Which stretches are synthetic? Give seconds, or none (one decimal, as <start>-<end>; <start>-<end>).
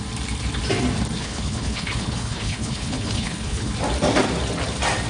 1.2-3.7